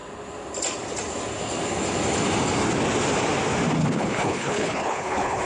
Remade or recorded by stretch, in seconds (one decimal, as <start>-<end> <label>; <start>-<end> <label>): 0.0-3.8 recorded; 3.8-5.4 remade